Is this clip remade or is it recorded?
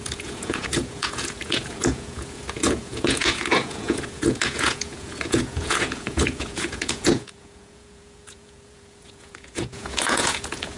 remade